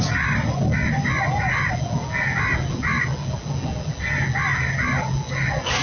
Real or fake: real